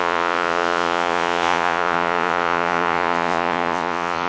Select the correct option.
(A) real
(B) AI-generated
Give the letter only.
B